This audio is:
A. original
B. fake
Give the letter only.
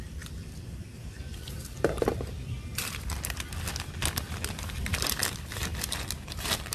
A